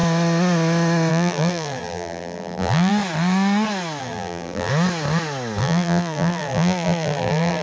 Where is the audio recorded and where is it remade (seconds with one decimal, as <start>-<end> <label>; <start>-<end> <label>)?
0.0-1.1 recorded; 1.1-2.9 remade; 2.9-4.0 recorded; 4.0-4.7 remade; 4.7-5.6 recorded; 5.6-7.6 remade